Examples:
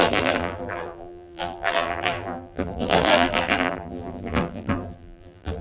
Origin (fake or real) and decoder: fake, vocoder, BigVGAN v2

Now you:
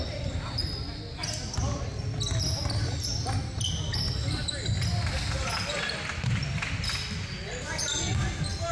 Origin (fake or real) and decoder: real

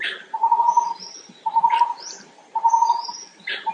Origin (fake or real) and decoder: real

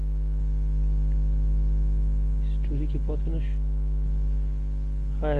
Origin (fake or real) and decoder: real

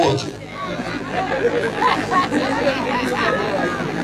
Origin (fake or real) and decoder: fake, vocoder, BigVGAN v2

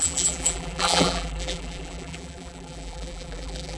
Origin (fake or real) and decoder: fake, vocoder, BigVGAN v2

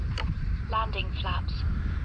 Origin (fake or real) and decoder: fake, vocoder, BigVGAN v2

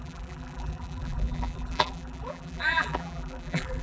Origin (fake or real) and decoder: fake, vocoder, BigVGAN v2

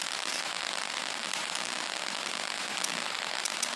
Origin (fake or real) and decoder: real